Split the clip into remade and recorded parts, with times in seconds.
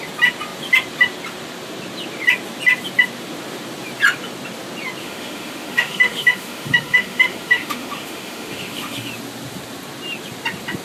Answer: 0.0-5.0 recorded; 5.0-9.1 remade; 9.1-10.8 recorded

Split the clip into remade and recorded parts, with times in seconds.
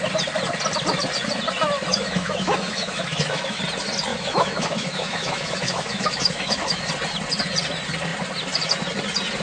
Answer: 0.0-1.9 recorded; 1.9-3.6 remade; 3.6-4.1 recorded; 4.1-6.9 remade; 6.9-9.4 recorded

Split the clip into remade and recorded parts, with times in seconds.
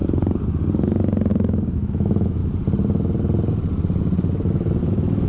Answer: 0.0-1.3 recorded; 1.3-2.4 remade; 2.4-4.8 recorded; 4.8-5.3 remade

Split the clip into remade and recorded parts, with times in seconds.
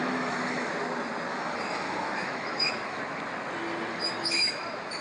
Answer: 0.0-0.7 remade; 0.7-1.3 recorded; 1.3-3.0 remade; 3.0-3.9 recorded; 3.9-4.6 remade; 4.6-5.0 recorded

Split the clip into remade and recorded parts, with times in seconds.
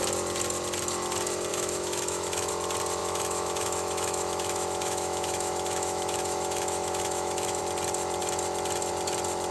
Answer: 0.0-1.5 recorded; 1.5-2.5 remade; 2.5-3.0 recorded; 3.0-7.6 remade; 7.6-9.5 recorded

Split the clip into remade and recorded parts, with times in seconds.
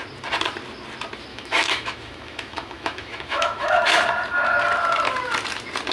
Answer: 0.0-1.3 recorded; 1.3-4.0 remade; 4.0-5.9 recorded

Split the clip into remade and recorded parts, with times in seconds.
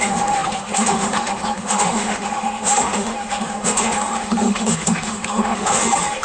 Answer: 0.0-6.2 remade